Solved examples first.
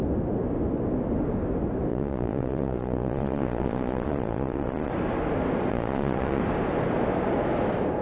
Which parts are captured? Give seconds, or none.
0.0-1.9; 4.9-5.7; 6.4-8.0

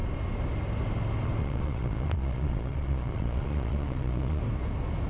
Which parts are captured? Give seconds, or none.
0.0-1.4; 4.4-5.1